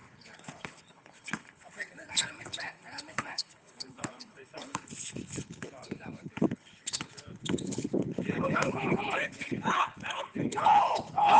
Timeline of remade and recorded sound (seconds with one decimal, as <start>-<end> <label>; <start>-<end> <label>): 0.0-11.4 remade